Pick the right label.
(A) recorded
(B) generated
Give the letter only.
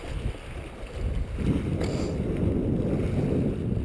A